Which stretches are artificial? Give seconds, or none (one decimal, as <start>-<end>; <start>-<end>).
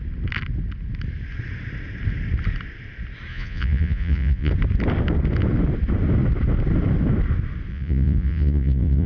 3.3-4.5; 7.7-9.1